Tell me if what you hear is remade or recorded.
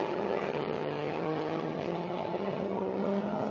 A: remade